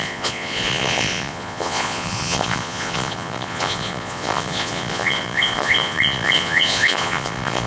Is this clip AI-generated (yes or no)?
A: yes